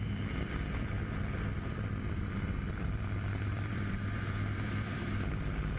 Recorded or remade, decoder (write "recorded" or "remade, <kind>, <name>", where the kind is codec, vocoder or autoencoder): remade, vocoder, BigVGAN v2